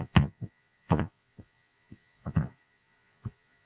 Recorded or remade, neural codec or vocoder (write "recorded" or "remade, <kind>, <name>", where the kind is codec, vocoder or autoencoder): remade, vocoder, Vocos